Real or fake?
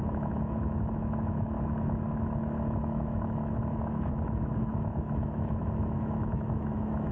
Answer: fake